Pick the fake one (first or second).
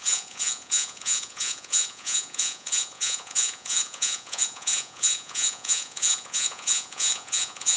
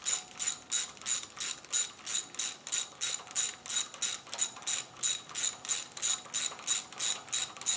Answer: first